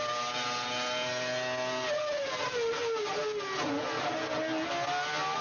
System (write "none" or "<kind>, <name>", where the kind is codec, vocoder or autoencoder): none